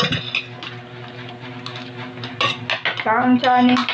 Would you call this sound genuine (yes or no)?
yes